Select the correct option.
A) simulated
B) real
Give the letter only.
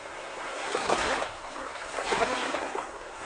A